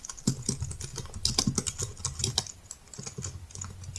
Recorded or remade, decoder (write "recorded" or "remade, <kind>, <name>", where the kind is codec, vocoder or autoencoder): recorded